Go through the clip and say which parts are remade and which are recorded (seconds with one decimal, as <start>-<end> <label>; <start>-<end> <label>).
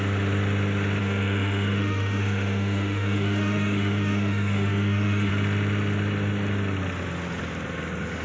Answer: 0.0-1.0 recorded; 1.0-5.3 remade; 5.3-8.2 recorded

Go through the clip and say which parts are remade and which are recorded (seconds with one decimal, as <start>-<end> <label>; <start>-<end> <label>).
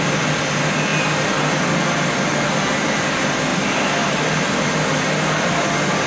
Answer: 0.0-6.1 recorded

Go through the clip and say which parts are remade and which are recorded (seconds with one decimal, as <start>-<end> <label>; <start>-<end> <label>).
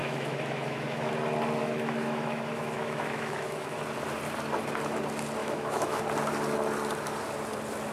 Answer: 0.0-1.1 remade; 1.1-1.6 recorded; 1.6-3.8 remade; 3.8-5.4 recorded; 5.4-6.0 remade; 6.0-7.9 recorded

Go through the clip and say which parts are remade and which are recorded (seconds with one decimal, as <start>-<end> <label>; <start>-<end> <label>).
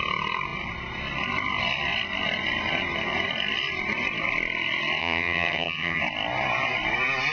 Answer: 0.0-5.0 recorded; 5.0-6.0 remade; 6.0-7.3 recorded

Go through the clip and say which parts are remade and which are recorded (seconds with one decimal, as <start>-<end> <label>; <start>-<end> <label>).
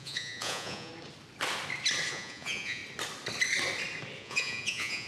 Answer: 0.0-0.9 remade; 0.9-2.1 recorded; 2.1-2.8 remade; 2.8-4.2 recorded; 4.2-5.1 remade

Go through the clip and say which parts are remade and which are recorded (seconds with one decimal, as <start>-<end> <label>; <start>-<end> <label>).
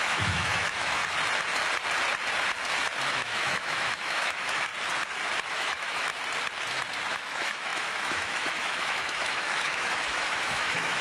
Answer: 0.0-1.0 remade; 1.0-3.1 recorded; 3.1-4.7 remade; 4.7-5.5 recorded; 5.5-6.1 remade; 6.1-7.1 recorded; 7.1-11.0 remade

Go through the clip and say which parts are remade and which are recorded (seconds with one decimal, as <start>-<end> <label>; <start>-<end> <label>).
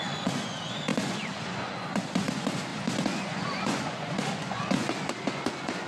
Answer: 0.0-5.9 remade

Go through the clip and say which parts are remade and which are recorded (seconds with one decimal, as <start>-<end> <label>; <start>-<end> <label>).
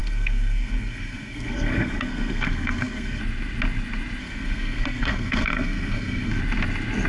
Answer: 0.0-3.2 remade; 3.2-4.2 recorded; 4.2-6.4 remade; 6.4-7.1 recorded